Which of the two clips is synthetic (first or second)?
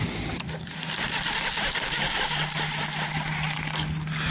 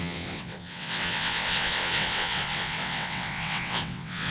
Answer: second